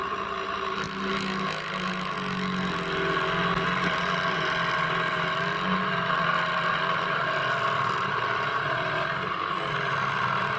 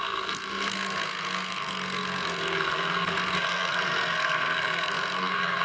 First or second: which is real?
first